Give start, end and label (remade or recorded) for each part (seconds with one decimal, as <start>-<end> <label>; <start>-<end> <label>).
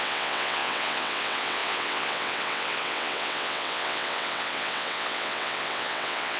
0.0-6.4 remade